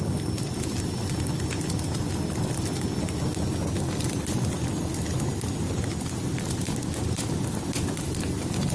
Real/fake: real